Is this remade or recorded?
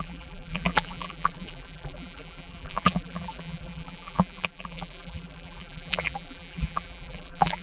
remade